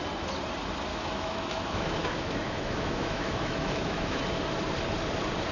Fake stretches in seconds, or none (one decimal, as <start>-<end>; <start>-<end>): 0.9-4.2